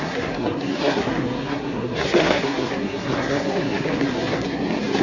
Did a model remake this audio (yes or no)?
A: yes